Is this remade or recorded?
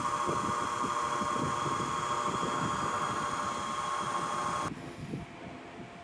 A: recorded